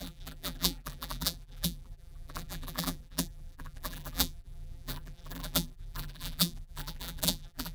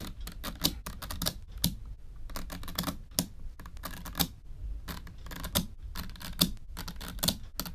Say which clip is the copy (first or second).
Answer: first